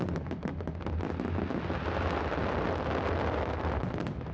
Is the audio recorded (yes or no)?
yes